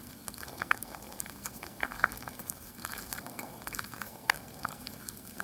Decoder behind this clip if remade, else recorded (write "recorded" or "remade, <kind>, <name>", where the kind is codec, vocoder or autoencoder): remade, codec, SNAC